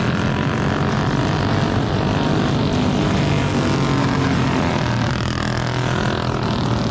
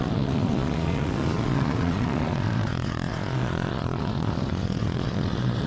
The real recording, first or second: first